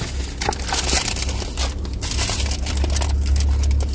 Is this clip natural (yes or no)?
yes